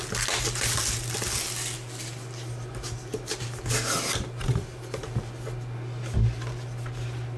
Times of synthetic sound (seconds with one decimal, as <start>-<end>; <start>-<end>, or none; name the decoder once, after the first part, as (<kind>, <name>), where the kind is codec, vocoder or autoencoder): none